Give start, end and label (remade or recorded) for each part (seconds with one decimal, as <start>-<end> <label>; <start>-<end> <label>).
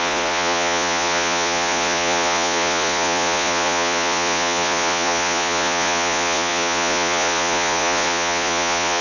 0.0-9.0 remade